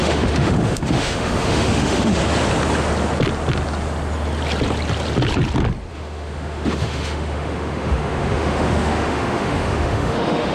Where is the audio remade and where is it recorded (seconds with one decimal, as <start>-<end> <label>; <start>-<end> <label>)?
0.0-2.2 remade; 2.2-5.9 recorded; 5.9-10.5 remade